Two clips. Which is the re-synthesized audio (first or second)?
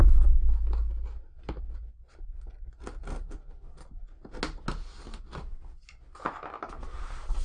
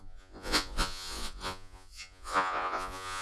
second